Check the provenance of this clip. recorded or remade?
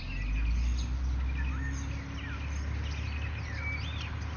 recorded